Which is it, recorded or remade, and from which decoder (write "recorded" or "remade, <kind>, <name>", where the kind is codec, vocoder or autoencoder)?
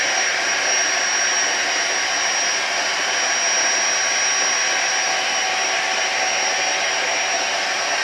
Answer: recorded